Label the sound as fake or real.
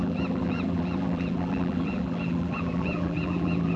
fake